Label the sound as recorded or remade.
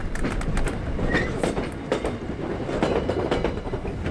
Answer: recorded